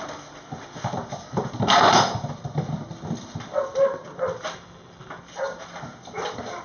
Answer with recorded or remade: recorded